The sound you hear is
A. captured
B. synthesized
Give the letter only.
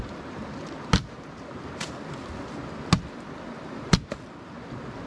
A